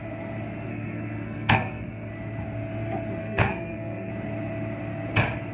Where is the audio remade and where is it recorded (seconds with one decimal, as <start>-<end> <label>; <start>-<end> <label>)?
0.0-0.7 recorded; 0.7-2.1 remade; 2.1-3.2 recorded; 3.2-4.1 remade; 4.1-5.5 recorded